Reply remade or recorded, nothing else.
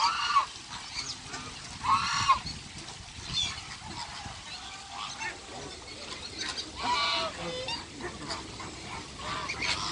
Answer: recorded